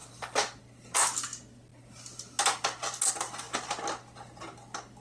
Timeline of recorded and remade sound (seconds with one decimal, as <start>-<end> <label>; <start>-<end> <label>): 0.0-5.0 recorded